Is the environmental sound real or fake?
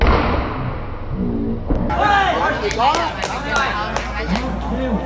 real